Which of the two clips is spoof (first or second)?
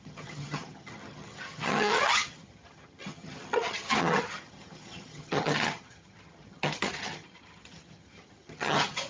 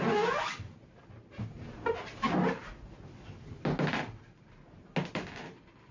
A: first